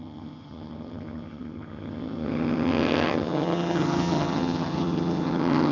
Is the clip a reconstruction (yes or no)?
yes